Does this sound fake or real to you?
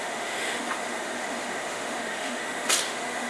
fake